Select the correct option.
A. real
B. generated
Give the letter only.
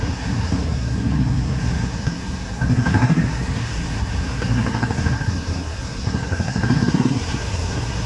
B